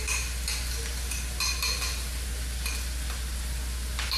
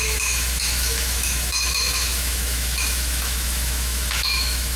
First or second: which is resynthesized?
second